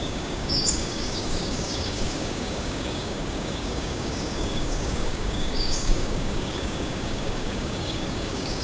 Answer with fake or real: fake